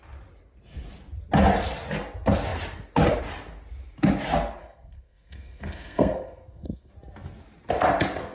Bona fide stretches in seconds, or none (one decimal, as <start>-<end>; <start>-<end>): 0.0-4.6; 6.9-8.3